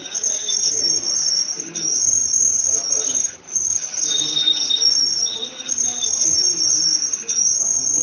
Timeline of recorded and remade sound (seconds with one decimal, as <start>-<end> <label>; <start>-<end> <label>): 0.0-8.0 recorded